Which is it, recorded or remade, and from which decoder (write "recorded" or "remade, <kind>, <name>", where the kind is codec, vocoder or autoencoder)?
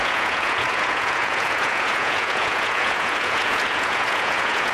remade, vocoder, Vocos